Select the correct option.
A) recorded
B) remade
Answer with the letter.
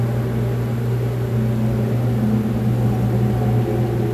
A